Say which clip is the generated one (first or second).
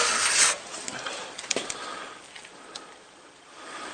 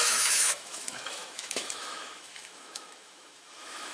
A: second